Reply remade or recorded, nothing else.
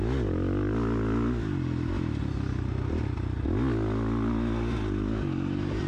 recorded